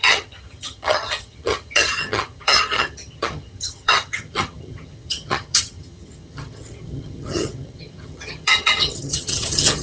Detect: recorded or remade remade